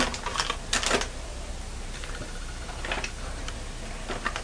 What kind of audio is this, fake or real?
real